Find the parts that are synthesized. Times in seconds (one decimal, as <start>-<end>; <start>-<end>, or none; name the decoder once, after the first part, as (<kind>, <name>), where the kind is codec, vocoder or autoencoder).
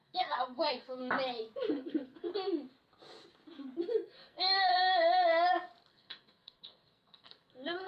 0.0-1.0 (codec, SNAC); 1.7-2.3; 3.8-4.7; 5.9-7.9